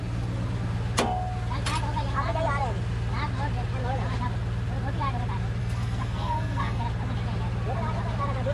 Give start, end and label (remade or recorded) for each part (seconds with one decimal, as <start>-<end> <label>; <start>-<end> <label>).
0.0-5.6 recorded; 5.6-6.8 remade; 6.8-8.5 recorded